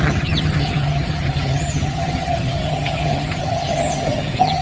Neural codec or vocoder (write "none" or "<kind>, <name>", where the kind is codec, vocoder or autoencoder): vocoder, HiFi-GAN